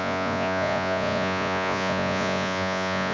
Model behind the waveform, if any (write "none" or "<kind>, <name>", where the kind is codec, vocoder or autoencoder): vocoder, Vocos